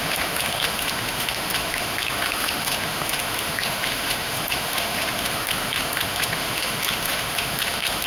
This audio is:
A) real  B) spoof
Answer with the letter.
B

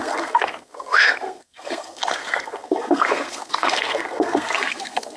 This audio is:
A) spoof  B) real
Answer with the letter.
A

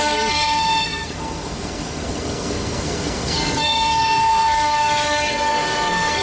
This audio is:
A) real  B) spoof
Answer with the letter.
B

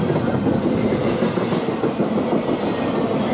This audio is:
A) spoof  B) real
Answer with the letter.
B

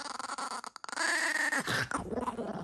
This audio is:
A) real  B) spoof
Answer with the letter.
A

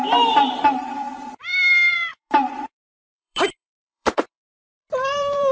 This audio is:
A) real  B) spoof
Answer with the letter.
B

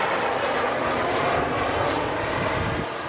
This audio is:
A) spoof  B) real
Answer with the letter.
B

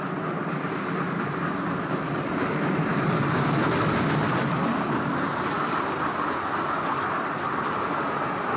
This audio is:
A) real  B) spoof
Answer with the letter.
A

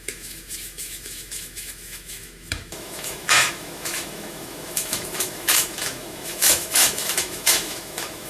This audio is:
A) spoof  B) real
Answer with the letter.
A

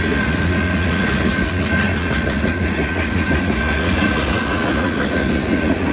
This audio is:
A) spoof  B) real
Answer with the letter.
A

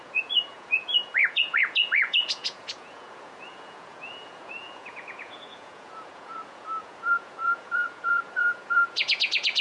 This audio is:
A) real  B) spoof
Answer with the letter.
B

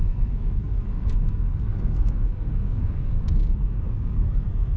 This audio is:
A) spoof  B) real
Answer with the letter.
A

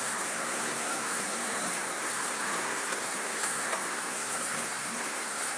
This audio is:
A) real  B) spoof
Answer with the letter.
B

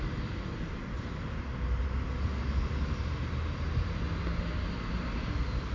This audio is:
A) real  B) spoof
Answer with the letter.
A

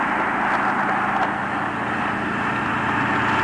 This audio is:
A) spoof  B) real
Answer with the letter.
B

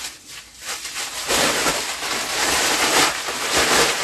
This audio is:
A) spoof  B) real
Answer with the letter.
B